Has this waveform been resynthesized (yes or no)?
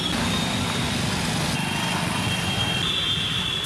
no